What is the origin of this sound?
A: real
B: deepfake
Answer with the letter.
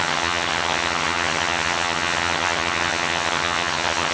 B